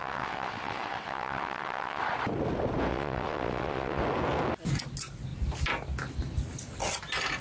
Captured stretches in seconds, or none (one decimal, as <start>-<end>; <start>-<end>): 2.0-2.9; 4.0-7.4